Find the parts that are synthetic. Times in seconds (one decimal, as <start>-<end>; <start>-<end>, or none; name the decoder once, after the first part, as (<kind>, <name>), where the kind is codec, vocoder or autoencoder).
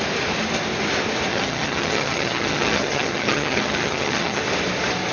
1.3-4.4 (vocoder, HiFi-GAN)